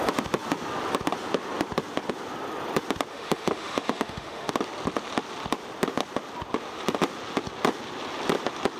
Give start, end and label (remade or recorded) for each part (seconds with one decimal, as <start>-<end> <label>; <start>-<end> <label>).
0.0-3.1 recorded; 3.1-4.5 remade; 4.5-8.8 recorded

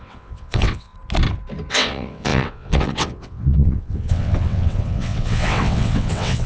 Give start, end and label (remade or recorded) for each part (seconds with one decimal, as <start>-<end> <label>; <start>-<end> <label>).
0.0-0.9 remade; 0.9-1.7 recorded; 1.7-6.5 remade

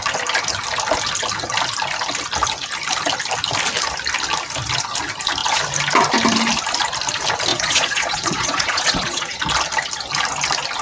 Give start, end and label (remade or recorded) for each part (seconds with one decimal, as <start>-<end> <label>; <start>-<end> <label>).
0.0-7.5 recorded; 7.5-9.4 remade; 9.4-10.8 recorded